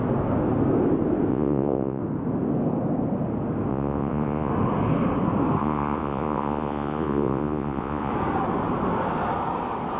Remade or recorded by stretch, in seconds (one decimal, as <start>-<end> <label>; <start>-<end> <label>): 0.0-1.3 recorded; 1.3-2.0 remade; 2.0-3.7 recorded; 3.7-4.5 remade; 4.5-5.6 recorded; 5.6-8.1 remade; 8.1-10.0 recorded